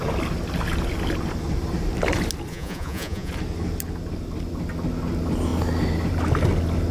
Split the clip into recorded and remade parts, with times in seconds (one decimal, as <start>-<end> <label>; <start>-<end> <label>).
0.0-2.5 recorded; 2.5-3.3 remade; 3.3-6.9 recorded

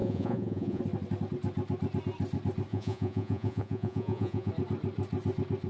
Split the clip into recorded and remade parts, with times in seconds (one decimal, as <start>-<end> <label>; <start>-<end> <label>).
0.0-0.8 remade; 0.8-2.7 recorded; 2.7-4.5 remade; 4.5-5.7 recorded

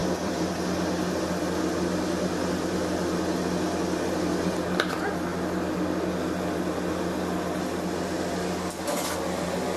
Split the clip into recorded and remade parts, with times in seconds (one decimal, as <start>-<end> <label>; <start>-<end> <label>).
0.0-9.8 recorded

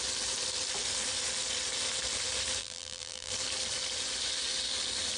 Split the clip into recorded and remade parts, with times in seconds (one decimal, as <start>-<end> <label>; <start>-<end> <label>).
0.0-2.6 recorded; 2.6-3.3 remade; 3.3-5.2 recorded

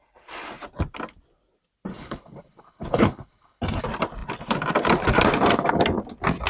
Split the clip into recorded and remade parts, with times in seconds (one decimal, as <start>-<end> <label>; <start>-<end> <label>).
0.0-1.9 recorded; 1.9-3.6 remade; 3.6-6.5 recorded